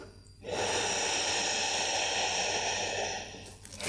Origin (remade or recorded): recorded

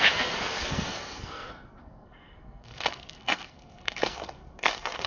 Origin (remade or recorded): remade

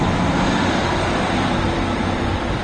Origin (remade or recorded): recorded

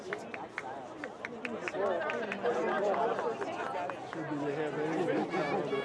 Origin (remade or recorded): recorded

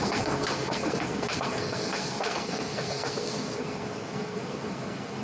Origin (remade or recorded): remade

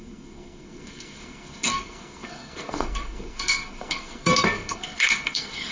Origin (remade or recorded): remade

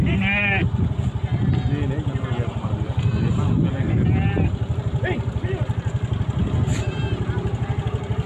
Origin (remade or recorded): recorded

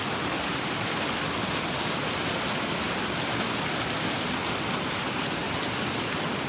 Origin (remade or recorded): recorded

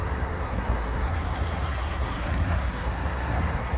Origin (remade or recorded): remade